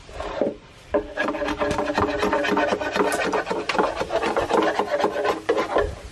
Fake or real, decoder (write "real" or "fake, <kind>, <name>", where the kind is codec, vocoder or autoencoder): real